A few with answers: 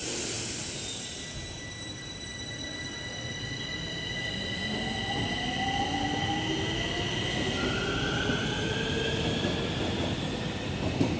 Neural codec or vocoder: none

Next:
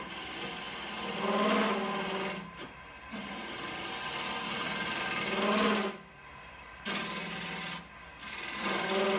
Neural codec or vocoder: none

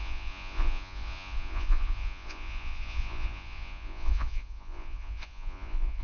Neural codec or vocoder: vocoder, Vocos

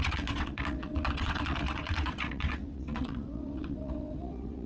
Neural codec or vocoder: vocoder, WaveNeXt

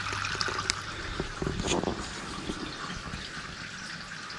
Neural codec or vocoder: none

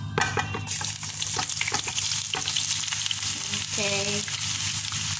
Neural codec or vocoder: none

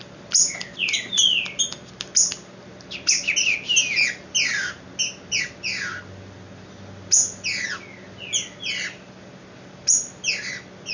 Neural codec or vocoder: none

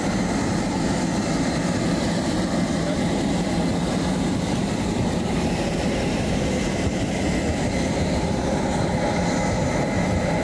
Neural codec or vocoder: none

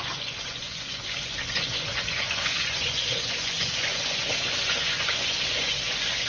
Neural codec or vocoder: vocoder, Vocos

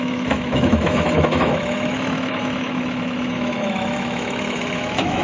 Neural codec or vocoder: autoencoder, DAC-VAE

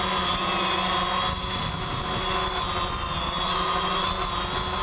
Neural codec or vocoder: none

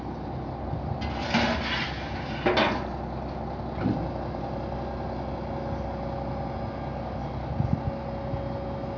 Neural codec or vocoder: none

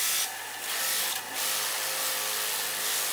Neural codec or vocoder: none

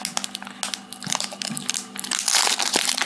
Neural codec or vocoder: none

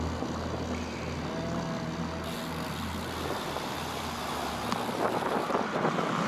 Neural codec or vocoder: none